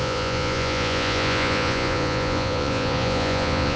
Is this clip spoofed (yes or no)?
yes